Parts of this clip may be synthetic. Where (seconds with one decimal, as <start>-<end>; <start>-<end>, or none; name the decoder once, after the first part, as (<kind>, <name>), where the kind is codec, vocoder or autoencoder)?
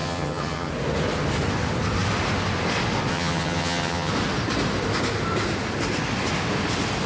0.0-0.7 (vocoder, HiFi-GAN); 3.1-4.1